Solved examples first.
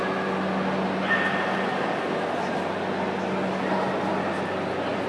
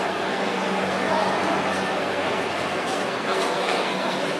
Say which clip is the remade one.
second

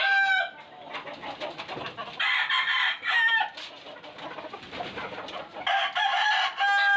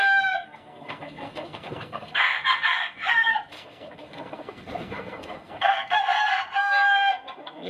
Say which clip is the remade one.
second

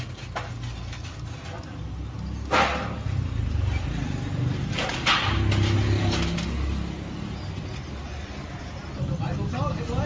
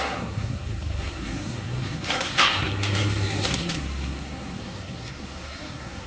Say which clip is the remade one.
second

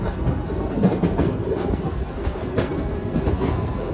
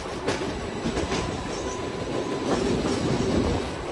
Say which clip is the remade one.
first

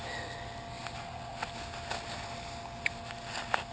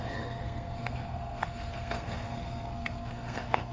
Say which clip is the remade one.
second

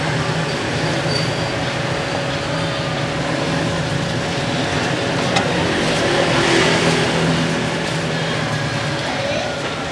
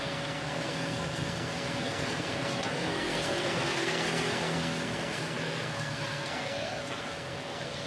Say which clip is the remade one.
second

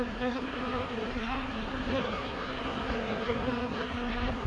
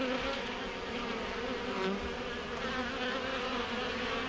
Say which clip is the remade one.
first